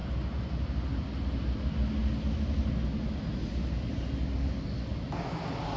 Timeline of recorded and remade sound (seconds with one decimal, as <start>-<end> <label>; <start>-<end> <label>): 0.0-5.8 recorded